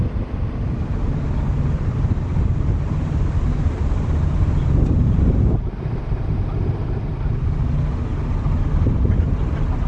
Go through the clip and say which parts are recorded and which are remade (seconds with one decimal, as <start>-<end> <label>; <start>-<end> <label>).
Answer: 0.0-9.9 recorded